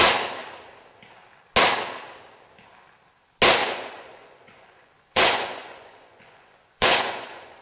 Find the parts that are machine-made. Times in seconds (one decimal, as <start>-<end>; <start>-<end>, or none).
3.6-7.6